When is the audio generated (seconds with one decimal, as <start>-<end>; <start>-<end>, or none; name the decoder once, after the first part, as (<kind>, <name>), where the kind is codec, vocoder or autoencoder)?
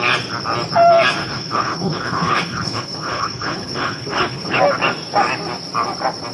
1.2-4.6 (codec, HILCodec)